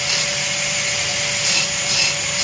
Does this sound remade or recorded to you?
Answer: recorded